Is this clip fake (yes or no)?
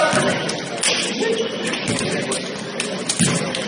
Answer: no